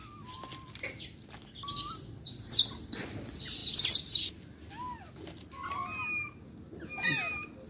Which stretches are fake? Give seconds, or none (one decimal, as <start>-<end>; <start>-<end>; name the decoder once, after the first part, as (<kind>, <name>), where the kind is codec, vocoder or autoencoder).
0.0-1.3 (vocoder, BigVGAN v2)